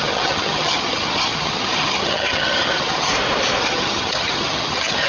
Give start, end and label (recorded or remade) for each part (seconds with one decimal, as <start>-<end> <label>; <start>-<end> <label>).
0.0-3.1 remade; 3.1-3.6 recorded; 3.6-5.1 remade